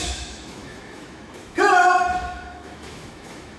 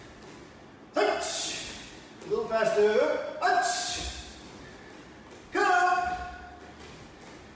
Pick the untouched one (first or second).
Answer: second